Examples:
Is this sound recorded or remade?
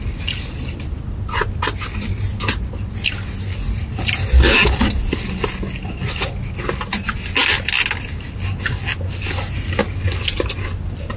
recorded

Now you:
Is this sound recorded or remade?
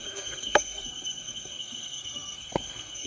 remade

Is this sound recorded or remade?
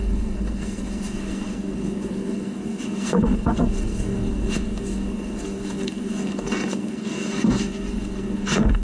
remade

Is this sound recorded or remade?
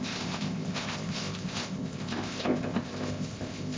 remade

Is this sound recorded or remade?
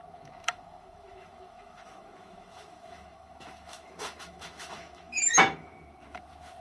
remade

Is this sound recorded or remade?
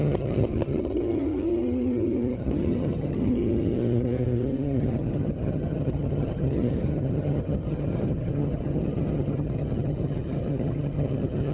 remade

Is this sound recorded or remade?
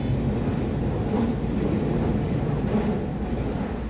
recorded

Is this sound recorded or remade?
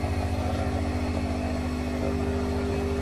recorded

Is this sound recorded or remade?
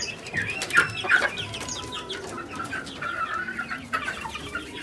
recorded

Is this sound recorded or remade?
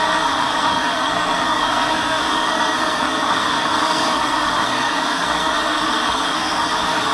remade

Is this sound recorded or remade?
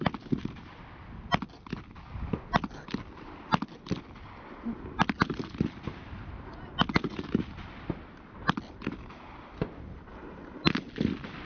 recorded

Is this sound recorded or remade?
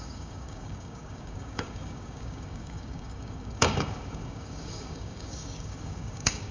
remade